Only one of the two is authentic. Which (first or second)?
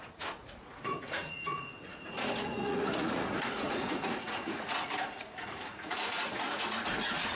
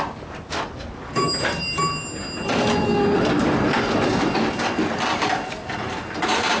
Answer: second